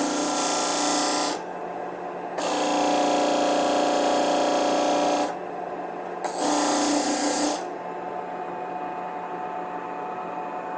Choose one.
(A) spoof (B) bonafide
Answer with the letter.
B